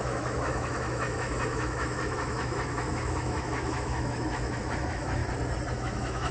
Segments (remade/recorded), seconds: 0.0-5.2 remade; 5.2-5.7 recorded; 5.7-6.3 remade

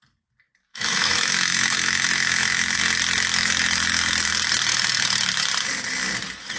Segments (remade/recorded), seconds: 0.0-0.7 recorded; 0.7-2.8 remade; 2.8-3.4 recorded; 3.4-4.3 remade; 4.3-4.7 recorded; 4.7-5.5 remade; 5.5-6.6 recorded

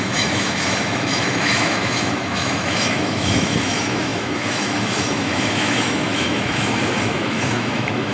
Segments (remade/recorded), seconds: 0.0-8.1 remade

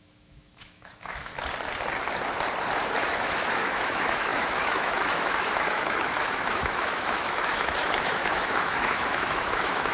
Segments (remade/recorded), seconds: 0.0-1.3 remade; 1.3-3.0 recorded; 3.0-9.9 remade